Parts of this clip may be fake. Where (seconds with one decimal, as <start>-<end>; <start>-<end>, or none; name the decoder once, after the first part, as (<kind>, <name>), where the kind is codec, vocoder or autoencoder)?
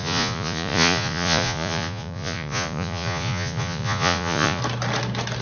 0.0-4.6 (vocoder, Vocos)